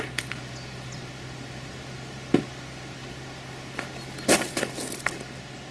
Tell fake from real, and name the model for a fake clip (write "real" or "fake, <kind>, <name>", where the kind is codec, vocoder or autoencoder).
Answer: real